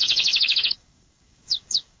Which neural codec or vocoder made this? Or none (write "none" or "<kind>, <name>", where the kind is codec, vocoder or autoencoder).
codec, DAC